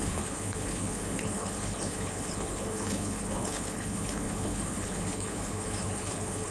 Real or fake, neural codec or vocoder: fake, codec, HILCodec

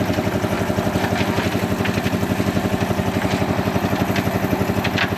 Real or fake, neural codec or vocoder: real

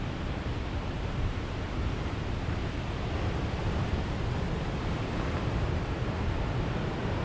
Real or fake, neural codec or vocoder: fake, vocoder, BigVGAN v2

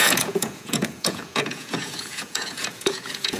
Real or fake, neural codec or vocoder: fake, vocoder, Vocos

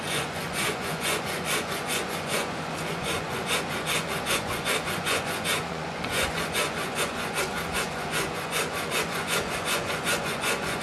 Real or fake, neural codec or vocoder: fake, vocoder, Vocos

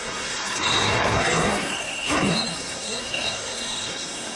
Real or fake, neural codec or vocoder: fake, codec, SNAC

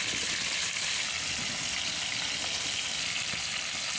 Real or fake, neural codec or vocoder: real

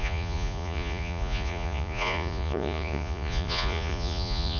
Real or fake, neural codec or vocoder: fake, vocoder, Vocos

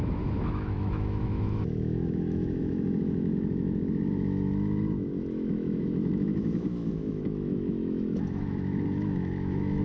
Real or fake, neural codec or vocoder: fake, autoencoder, DAC-VAE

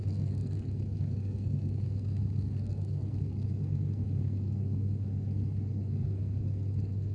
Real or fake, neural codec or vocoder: fake, codec, SNAC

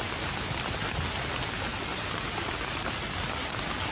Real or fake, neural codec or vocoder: real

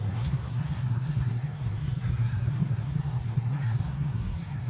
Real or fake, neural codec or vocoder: fake, codec, SNAC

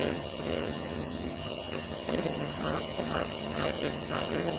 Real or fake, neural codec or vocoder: fake, vocoder, HiFi-GAN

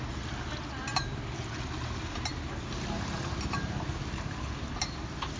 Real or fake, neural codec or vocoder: real